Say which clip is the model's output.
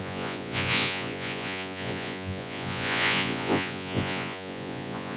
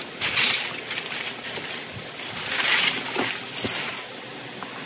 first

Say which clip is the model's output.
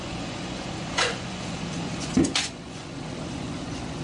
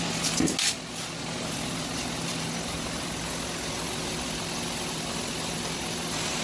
first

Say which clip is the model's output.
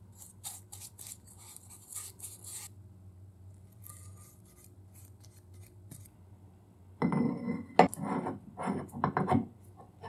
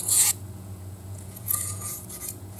second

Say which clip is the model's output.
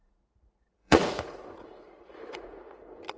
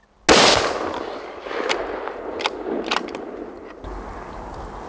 first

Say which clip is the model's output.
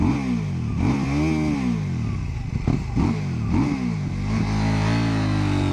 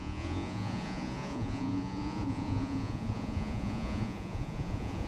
second